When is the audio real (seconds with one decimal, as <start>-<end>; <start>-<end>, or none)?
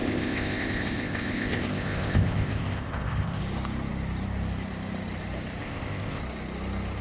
3.4-5.6; 6.2-7.0